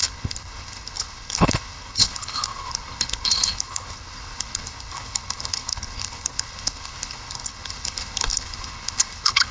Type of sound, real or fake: fake